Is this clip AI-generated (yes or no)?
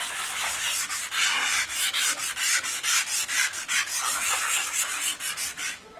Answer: yes